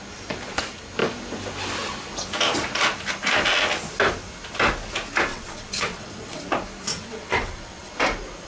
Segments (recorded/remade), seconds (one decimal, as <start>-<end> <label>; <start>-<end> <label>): 0.0-5.3 recorded; 5.3-6.5 remade; 6.5-6.9 recorded; 6.9-7.9 remade; 7.9-8.5 recorded